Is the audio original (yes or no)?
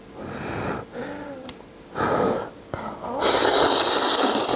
yes